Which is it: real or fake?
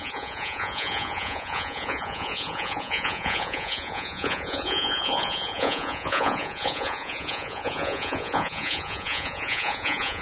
fake